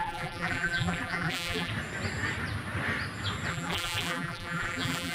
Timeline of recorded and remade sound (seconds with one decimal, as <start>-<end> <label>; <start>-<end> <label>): 0.0-1.7 remade; 1.7-3.5 recorded; 3.5-5.1 remade